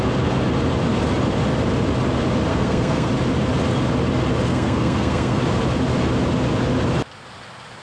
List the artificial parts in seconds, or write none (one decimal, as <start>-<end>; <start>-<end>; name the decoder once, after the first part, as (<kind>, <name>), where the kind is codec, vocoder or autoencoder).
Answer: 2.5-3.1 (codec, SNAC); 4.5-5.4

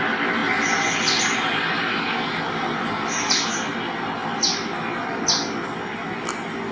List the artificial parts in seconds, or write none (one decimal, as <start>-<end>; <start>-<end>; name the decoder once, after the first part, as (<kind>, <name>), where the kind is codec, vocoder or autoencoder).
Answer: none

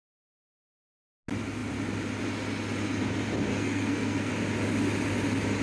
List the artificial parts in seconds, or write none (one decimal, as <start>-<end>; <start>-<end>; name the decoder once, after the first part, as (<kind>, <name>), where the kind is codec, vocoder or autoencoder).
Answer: 3.5-4.3 (codec, SNAC)

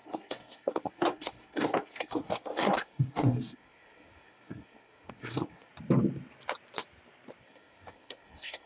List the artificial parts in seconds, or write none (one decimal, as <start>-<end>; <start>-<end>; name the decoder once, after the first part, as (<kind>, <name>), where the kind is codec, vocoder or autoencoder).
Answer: 0.0-5.7 (codec, SNAC); 7.4-8.7

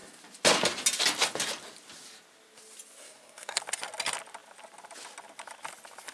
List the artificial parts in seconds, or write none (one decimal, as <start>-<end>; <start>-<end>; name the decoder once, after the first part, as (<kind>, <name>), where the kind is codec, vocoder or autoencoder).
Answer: 3.0-3.6 (codec, SNAC)

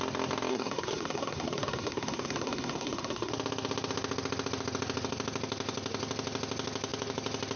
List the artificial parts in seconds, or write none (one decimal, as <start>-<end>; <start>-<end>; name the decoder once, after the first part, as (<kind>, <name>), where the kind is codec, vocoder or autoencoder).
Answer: 0.5-3.3 (codec, SNAC)

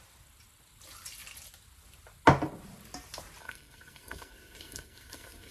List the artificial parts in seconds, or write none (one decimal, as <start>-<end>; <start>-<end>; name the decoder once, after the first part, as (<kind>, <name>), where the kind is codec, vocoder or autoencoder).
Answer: 3.4-5.5 (codec, SNAC)

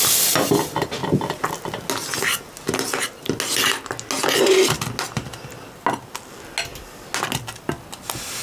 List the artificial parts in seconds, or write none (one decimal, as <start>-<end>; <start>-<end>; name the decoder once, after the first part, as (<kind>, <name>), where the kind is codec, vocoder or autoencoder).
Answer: none